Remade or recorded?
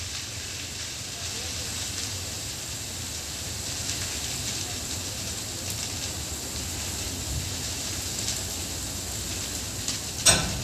recorded